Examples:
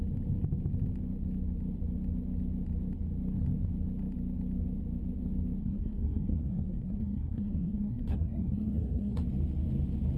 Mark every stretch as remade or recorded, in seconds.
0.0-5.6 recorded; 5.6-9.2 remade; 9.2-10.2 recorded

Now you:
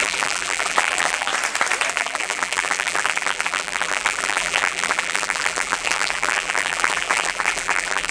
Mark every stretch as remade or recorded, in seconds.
0.0-1.3 remade; 1.3-1.9 recorded; 1.9-8.1 remade